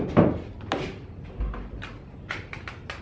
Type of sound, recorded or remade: recorded